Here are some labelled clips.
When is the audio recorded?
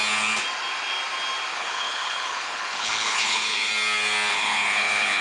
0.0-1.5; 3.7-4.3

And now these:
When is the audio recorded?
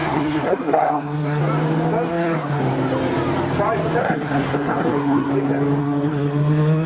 1.4-2.1; 2.6-4.0; 5.3-5.8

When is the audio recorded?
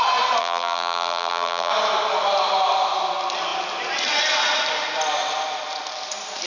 0.0-0.4; 1.7-6.5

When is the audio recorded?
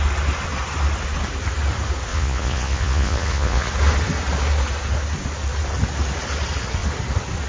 0.0-2.1; 3.7-7.5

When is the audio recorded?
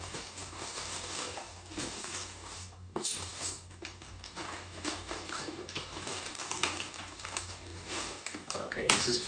none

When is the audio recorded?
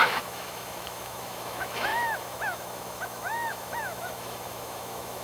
none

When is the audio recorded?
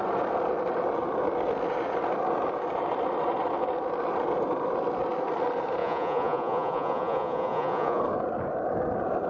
0.0-5.8; 8.0-9.3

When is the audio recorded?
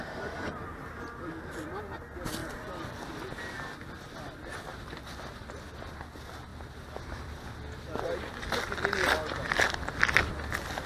0.0-2.4; 3.2-4.7; 5.5-6.5; 7.4-10.9